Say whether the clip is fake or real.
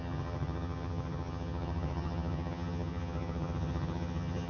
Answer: fake